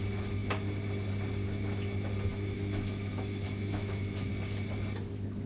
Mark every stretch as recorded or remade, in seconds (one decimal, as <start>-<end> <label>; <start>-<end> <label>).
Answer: 0.0-2.3 recorded; 2.3-4.3 remade; 4.3-5.5 recorded